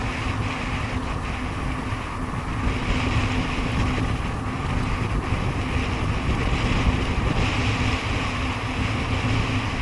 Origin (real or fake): real